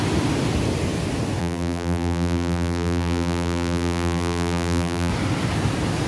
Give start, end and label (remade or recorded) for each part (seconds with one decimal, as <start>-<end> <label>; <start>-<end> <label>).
0.0-1.4 recorded; 1.4-5.1 remade; 5.1-6.1 recorded

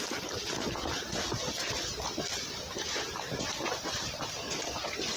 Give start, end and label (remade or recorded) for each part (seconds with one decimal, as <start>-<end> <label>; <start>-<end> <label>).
0.0-5.2 recorded

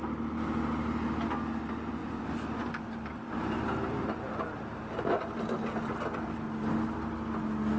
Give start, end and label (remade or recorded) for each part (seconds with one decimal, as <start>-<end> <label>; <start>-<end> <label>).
0.0-2.0 recorded; 2.0-6.7 remade; 6.7-7.8 recorded

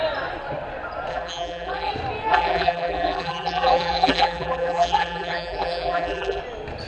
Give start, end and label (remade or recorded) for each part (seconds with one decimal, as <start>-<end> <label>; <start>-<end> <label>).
0.0-1.1 recorded; 1.1-1.9 remade; 1.9-2.3 recorded; 2.3-6.4 remade; 6.4-6.9 recorded

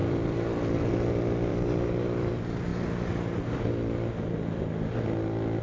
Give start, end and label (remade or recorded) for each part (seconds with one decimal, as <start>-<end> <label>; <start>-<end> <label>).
0.0-0.9 remade; 0.9-1.5 recorded; 1.5-2.3 remade; 2.3-5.6 recorded

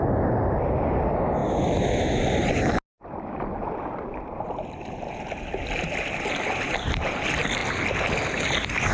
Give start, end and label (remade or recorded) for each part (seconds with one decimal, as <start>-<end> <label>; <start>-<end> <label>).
0.0-8.9 recorded